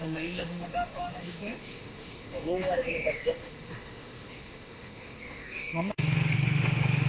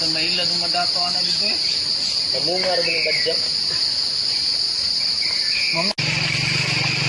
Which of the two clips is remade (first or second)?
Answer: first